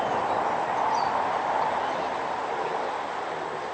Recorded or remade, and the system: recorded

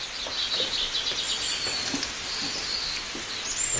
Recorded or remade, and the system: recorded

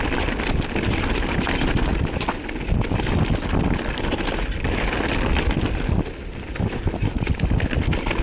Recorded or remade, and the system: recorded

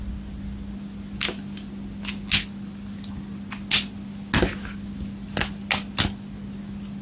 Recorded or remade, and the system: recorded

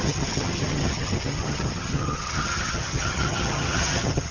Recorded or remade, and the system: remade, vocoder, HiFi-GAN